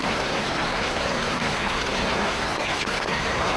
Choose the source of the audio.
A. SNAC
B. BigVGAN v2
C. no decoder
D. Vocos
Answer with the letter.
A